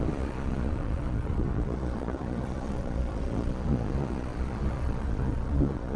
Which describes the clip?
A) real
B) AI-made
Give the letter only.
B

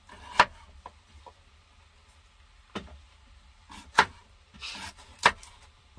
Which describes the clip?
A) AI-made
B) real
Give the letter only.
B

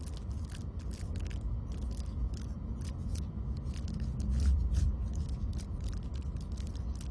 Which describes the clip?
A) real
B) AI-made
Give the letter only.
A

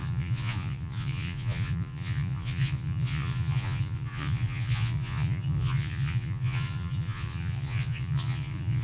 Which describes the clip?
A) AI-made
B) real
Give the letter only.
A